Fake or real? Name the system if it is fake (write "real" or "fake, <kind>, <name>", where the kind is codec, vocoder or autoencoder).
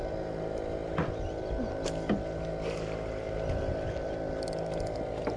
real